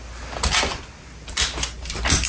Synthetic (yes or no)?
no